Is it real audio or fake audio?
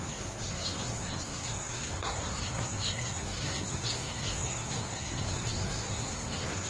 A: fake